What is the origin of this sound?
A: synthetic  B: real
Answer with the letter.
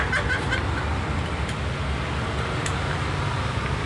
B